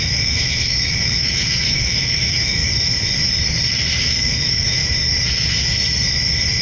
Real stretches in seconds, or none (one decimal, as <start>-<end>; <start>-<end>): 2.6-4.0; 4.8-6.6